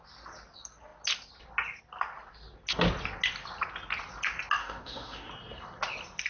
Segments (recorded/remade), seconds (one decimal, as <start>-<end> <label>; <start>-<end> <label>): 0.0-4.6 recorded; 4.6-5.3 remade; 5.3-6.3 recorded